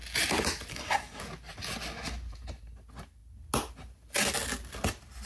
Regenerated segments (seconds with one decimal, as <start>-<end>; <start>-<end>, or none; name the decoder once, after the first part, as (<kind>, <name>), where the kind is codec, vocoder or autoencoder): 0.7-1.2 (codec, SNAC)